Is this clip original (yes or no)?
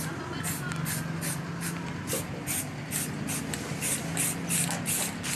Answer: yes